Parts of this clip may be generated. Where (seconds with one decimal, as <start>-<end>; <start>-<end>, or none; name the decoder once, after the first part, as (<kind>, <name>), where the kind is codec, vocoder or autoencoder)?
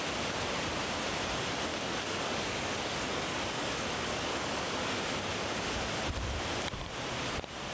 1.7-5.0 (codec, DAC)